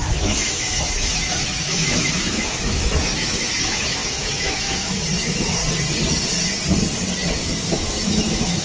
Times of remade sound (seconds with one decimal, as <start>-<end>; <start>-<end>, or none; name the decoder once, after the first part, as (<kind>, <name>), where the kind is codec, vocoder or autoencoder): 0.0-5.6 (autoencoder, DAC-VAE); 7.4-8.6